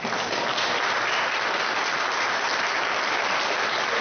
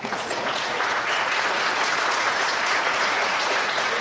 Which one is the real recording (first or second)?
first